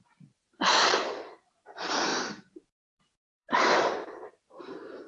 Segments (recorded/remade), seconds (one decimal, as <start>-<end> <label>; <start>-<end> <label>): 0.0-0.7 remade; 0.7-1.3 recorded; 1.3-5.1 remade